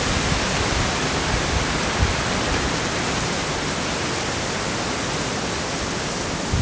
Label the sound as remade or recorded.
recorded